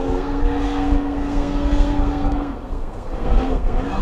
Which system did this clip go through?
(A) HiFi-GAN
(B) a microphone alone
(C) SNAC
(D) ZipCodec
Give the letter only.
C